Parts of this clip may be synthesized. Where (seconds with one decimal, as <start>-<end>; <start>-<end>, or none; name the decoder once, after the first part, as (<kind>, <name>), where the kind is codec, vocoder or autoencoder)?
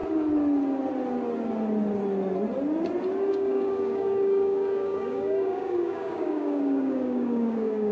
3.3-7.9 (codec, DAC)